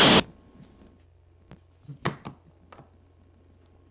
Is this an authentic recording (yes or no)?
yes